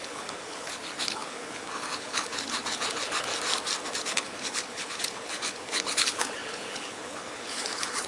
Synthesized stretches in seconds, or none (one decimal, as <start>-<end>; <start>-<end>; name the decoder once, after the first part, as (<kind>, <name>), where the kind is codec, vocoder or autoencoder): 0.0-3.3 (codec, HILCodec); 4.0-8.1